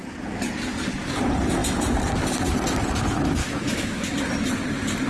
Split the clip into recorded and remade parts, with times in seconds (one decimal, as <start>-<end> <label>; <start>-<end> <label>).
0.0-3.4 recorded; 3.4-4.2 remade; 4.2-5.1 recorded